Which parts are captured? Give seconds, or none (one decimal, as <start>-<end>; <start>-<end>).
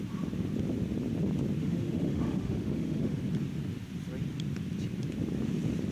0.0-1.6; 3.2-5.9